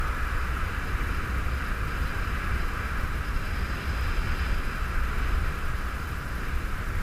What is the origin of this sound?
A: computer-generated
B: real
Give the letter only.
B